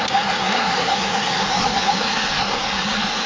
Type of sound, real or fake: fake